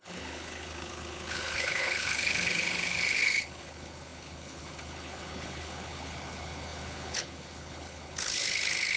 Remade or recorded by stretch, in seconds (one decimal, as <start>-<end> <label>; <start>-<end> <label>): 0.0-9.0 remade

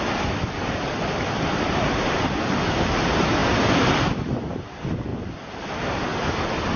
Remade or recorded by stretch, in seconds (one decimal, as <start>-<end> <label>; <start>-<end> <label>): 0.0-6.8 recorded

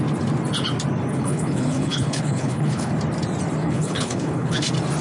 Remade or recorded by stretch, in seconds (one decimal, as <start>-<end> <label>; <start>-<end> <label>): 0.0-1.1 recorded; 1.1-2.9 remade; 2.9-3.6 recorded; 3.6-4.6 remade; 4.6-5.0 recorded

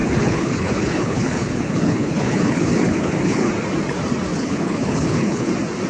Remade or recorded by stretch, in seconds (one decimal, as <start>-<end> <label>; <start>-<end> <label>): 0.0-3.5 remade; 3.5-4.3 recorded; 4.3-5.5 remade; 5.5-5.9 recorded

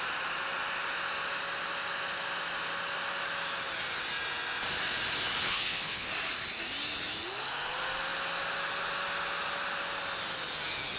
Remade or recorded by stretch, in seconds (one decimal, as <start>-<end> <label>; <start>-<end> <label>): 0.0-5.4 recorded; 5.4-6.1 remade; 6.1-11.0 recorded

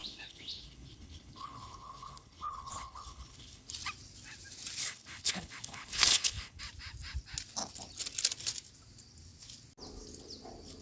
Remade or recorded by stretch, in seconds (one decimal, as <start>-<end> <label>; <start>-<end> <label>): 0.0-3.7 remade; 3.7-4.8 recorded; 4.8-6.6 remade; 6.6-10.8 recorded